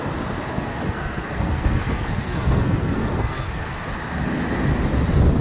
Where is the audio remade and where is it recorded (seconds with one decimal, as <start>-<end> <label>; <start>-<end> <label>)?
0.0-0.5 recorded; 0.5-3.7 remade; 3.7-5.4 recorded